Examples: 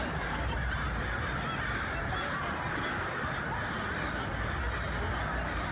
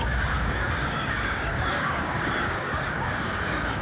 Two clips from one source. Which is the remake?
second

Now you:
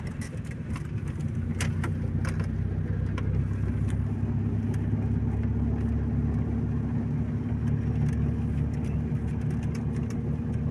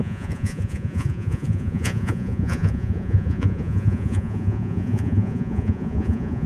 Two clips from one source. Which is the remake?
second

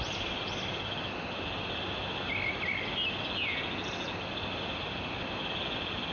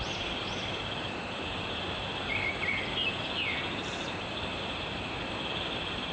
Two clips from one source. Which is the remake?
second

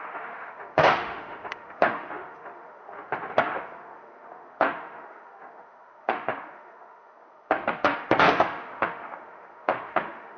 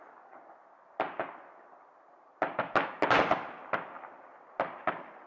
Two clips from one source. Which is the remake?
first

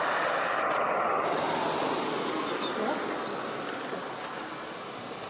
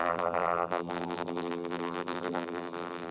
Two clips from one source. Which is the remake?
second